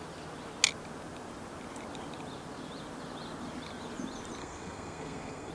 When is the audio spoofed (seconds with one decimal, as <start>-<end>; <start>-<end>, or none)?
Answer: 4.4-5.5